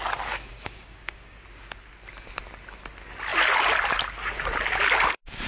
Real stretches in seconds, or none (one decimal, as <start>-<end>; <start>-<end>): 0.0-0.5; 1.4-5.5